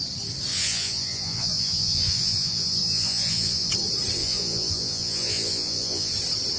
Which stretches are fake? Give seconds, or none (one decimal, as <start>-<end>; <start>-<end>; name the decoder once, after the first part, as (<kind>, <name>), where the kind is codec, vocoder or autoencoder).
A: 0.5-3.7 (vocoder, Vocos); 4.2-6.1